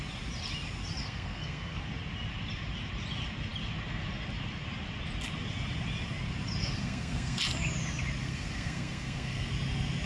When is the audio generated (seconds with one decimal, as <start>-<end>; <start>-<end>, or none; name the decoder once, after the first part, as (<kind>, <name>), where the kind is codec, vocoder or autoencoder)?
1.0-1.8 (codec, SNAC); 6.6-7.4; 8.2-9.5